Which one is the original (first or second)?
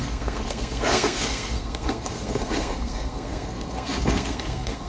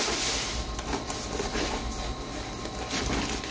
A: second